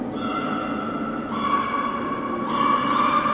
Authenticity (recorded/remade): recorded